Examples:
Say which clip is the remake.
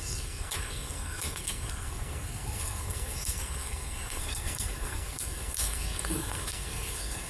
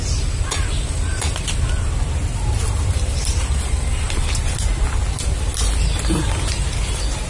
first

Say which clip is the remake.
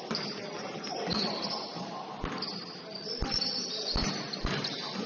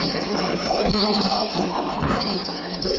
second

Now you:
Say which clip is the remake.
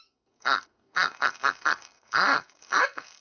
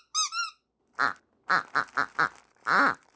first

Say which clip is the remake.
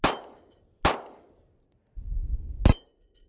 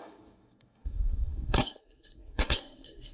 second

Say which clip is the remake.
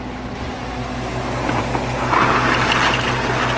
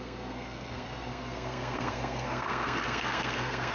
second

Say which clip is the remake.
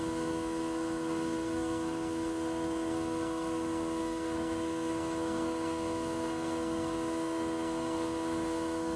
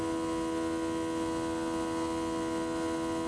first